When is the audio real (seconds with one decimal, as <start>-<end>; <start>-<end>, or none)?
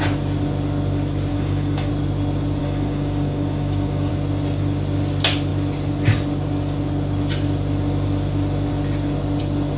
0.0-1.3; 1.9-2.6; 4.1-9.8